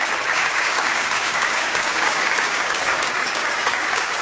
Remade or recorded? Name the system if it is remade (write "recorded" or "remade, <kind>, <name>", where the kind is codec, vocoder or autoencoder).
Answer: remade, codec, DAC